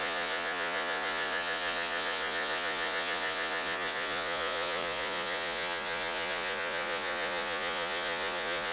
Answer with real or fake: fake